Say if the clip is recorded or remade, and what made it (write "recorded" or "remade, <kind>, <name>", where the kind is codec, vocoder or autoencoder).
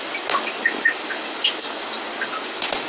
recorded